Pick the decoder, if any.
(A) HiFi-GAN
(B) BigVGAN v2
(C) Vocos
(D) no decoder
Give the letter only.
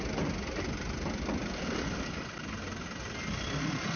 D